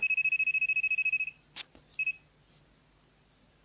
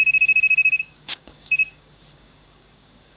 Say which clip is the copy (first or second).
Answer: second